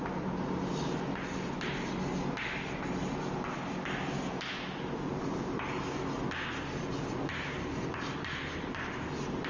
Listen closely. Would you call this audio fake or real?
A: real